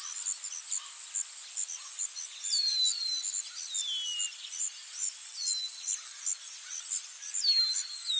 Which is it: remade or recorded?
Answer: recorded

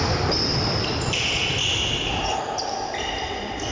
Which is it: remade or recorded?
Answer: recorded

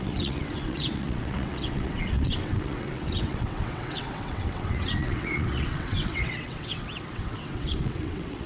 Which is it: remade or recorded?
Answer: remade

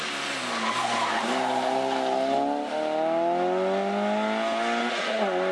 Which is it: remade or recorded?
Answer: recorded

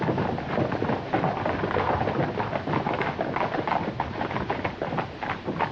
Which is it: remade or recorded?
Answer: recorded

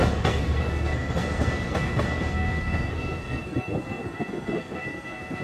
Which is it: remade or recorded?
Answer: remade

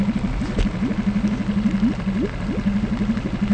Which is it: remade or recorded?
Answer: recorded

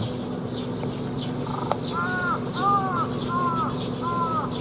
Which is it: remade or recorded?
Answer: recorded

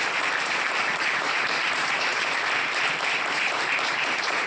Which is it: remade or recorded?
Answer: remade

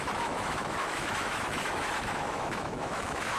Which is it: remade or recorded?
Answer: remade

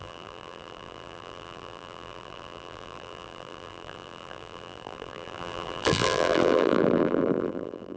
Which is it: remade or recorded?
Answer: remade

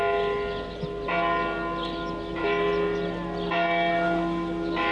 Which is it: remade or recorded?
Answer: recorded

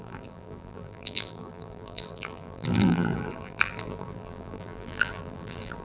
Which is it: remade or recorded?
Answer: remade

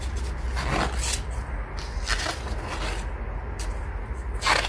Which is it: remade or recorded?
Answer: recorded